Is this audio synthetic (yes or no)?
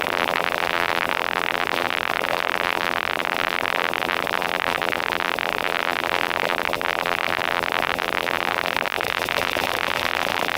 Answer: yes